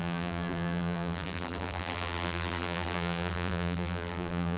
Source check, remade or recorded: remade